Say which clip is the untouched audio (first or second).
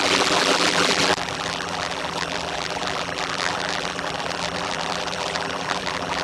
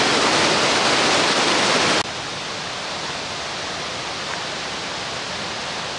second